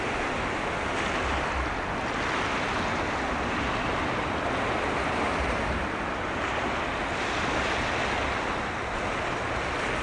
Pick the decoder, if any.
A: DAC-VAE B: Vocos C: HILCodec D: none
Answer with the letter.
D